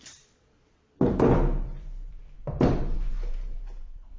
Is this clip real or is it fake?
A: fake